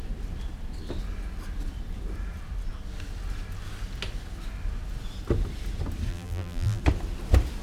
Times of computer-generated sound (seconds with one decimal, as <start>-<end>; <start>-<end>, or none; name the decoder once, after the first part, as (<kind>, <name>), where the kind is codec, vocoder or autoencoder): 6.1-6.8 (vocoder, BigVGAN v2)